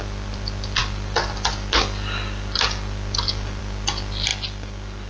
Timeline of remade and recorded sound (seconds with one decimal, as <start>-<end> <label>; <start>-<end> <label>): 0.0-5.1 recorded